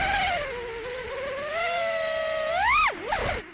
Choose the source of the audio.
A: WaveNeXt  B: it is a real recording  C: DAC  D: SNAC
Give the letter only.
B